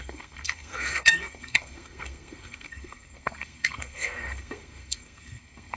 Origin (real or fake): fake